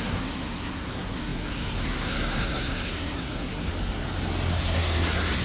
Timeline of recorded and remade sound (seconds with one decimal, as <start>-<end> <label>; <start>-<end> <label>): 0.0-3.7 remade; 3.7-4.5 recorded; 4.5-5.4 remade